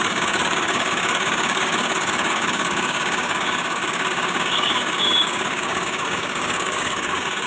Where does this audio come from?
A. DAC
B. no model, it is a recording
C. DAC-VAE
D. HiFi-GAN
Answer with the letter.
A